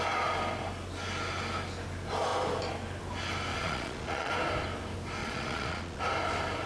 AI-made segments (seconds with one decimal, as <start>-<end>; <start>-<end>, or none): 3.5-4.3; 5.2-6.0